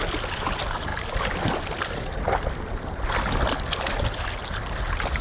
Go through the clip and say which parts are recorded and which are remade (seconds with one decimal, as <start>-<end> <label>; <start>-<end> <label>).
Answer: 0.0-5.2 recorded